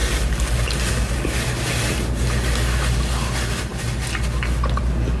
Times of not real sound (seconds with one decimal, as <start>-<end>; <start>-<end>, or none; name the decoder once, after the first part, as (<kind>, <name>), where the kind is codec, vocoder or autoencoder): none